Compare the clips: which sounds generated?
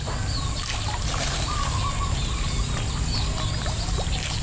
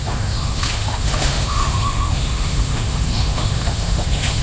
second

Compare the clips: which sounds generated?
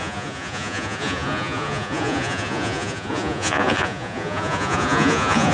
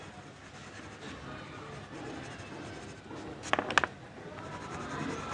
first